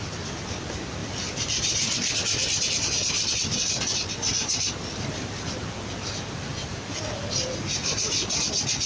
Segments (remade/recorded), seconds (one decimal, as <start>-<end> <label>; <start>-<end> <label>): 0.0-1.0 recorded; 1.0-3.7 remade; 3.7-4.3 recorded; 4.3-5.3 remade; 5.3-7.8 recorded; 7.8-8.5 remade; 8.5-8.9 recorded